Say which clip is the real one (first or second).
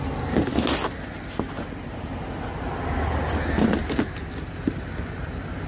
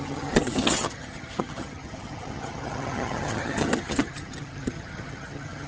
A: first